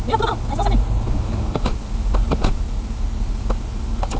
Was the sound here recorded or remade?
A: recorded